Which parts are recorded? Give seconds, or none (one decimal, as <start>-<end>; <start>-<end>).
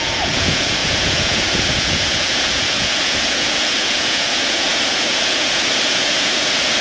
none